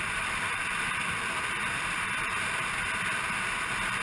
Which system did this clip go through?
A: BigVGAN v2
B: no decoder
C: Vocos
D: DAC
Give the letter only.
A